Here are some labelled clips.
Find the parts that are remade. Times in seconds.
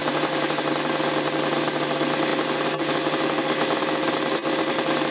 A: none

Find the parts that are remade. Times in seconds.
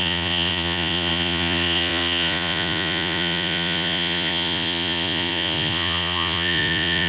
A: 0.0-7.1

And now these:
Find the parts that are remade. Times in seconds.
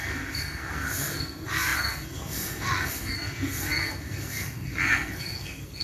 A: 0.0-5.8